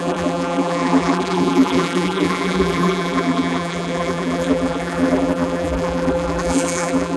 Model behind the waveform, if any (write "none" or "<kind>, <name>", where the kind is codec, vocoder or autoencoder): vocoder, BigVGAN v2